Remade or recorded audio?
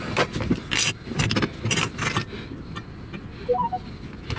recorded